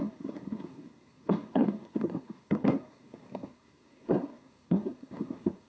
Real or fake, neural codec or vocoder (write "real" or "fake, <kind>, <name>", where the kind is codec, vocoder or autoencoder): fake, codec, SNAC